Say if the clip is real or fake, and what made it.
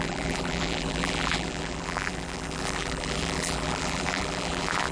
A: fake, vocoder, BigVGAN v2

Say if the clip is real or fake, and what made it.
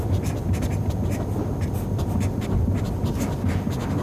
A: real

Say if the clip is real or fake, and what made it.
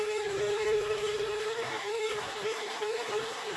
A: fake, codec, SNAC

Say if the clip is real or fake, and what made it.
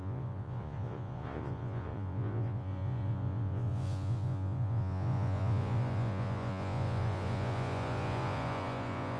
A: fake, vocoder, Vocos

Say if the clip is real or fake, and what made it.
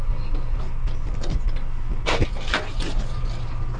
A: real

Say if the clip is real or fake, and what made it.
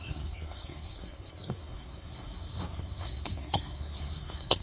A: fake, codec, SNAC